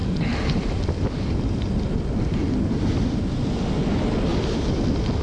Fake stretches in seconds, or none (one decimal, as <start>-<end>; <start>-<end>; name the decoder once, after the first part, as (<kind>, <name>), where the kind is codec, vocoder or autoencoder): 0.0-1.9 (vocoder, BigVGAN v2); 4.3-4.8